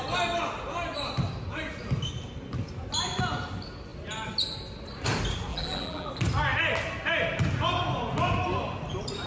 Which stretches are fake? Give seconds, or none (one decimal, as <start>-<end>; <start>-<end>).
5.5-6.1